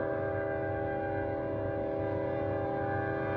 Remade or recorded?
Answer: recorded